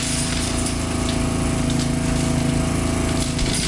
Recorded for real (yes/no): yes